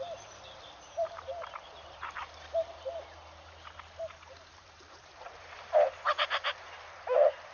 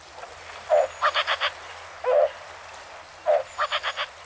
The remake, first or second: first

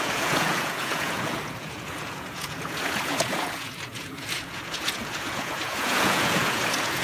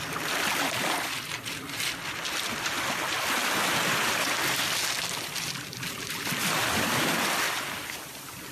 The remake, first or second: first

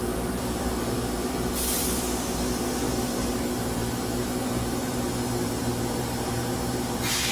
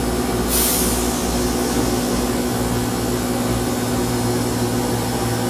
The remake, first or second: first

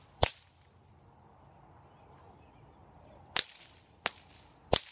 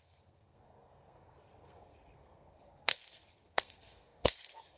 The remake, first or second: second